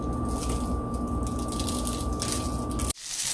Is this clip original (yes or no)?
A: yes